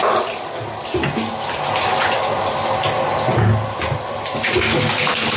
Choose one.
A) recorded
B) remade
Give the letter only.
A